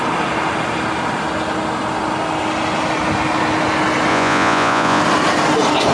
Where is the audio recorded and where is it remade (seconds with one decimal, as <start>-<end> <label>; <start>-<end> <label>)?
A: 0.0-4.1 recorded; 4.1-5.0 remade; 5.0-5.9 recorded